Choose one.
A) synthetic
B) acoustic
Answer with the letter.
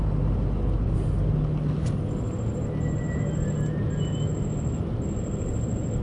B